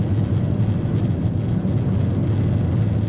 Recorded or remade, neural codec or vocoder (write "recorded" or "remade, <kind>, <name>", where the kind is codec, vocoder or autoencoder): recorded